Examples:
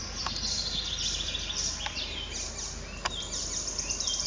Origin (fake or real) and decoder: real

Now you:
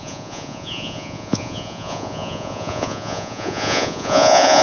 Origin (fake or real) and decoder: fake, vocoder, Vocos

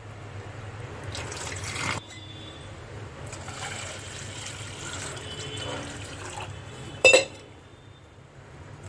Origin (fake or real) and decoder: fake, vocoder, BigVGAN v2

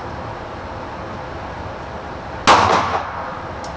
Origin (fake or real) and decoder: real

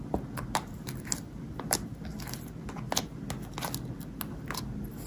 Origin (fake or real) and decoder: real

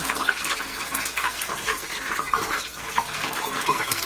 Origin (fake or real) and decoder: fake, codec, SNAC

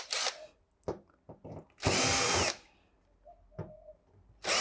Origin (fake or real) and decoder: real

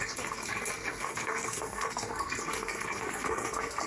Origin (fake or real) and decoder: fake, codec, SNAC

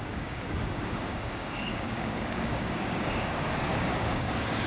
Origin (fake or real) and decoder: fake, codec, DAC